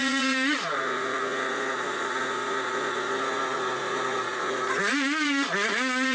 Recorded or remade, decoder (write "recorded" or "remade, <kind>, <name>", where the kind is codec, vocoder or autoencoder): remade, vocoder, Vocos